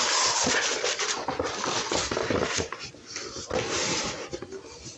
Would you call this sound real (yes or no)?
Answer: yes